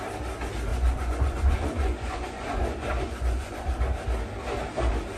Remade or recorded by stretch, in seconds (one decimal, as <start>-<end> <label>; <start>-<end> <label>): 0.0-0.7 recorded; 0.7-3.8 remade; 3.8-5.2 recorded